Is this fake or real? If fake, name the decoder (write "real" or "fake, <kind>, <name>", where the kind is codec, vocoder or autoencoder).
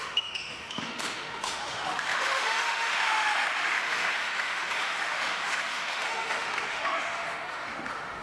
fake, autoencoder, DAC-VAE